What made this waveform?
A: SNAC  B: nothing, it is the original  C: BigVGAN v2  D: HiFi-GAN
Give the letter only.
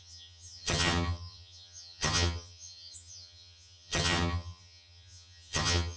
D